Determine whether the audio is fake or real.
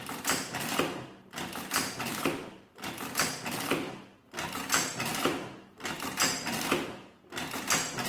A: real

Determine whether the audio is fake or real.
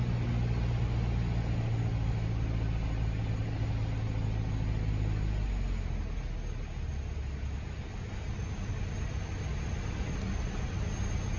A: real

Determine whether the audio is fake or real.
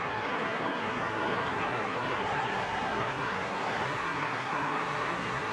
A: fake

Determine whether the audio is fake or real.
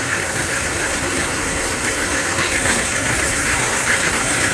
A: fake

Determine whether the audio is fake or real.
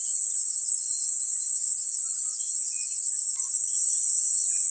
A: real